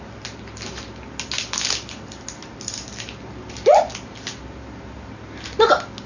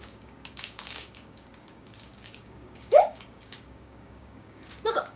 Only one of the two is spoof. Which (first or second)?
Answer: second